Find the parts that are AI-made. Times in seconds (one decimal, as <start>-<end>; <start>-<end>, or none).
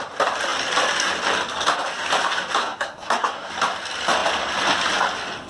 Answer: 2.6-3.5